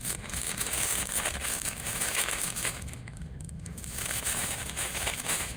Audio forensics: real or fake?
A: fake